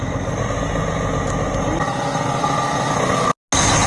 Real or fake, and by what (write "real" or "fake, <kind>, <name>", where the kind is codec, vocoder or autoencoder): real